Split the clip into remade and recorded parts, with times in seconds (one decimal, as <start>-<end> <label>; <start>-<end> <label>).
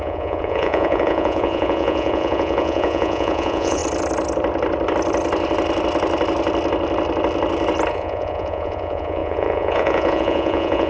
0.0-3.8 remade; 3.8-7.9 recorded; 7.9-10.9 remade